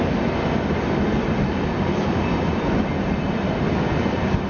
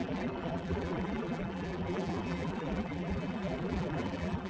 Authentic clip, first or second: first